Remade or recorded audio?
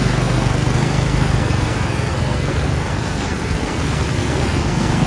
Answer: remade